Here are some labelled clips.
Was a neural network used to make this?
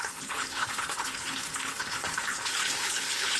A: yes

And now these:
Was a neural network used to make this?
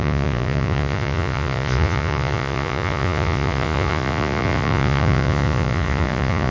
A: yes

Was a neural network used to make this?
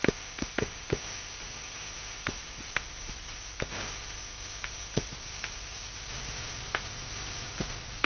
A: no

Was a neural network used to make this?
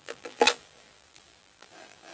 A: yes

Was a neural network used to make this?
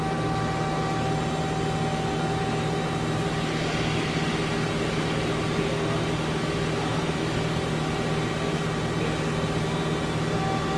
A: no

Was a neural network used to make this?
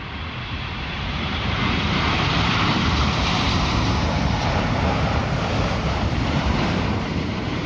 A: yes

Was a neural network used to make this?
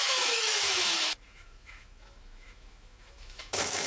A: yes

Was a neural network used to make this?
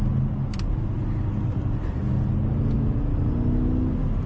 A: no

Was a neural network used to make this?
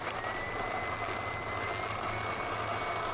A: no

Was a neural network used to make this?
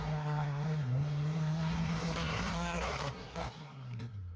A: yes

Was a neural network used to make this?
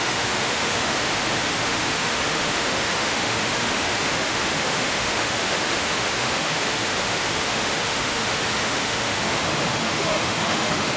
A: yes